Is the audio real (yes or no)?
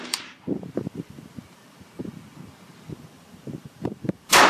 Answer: no